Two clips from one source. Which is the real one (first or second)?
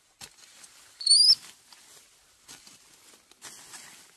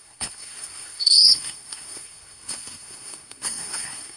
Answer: first